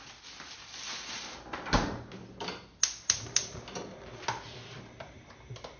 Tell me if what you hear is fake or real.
real